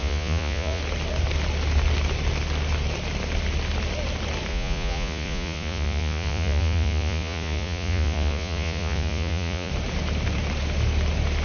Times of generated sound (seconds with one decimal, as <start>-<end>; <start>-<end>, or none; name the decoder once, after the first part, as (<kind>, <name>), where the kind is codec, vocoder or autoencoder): 0.0-0.8 (vocoder, Vocos); 4.5-9.7